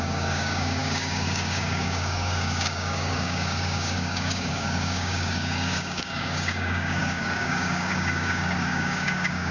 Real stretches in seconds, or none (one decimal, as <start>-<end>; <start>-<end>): none